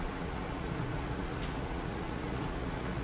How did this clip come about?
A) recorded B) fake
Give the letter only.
B